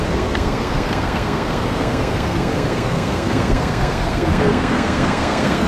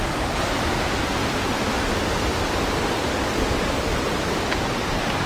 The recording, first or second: second